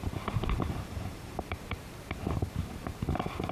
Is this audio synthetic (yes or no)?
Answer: yes